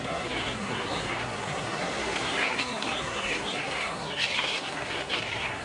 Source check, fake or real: fake